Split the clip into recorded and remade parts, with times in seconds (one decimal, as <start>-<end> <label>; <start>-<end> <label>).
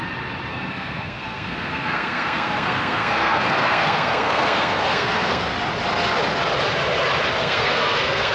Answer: 0.0-0.5 recorded; 0.5-5.5 remade; 5.5-7.4 recorded; 7.4-8.3 remade